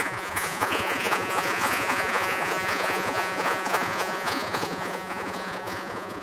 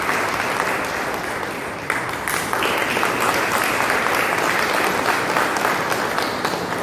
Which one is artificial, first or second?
first